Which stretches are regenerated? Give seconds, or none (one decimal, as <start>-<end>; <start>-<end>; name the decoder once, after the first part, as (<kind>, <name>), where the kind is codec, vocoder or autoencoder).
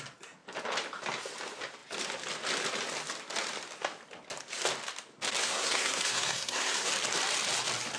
5.4-6.9 (codec, SNAC)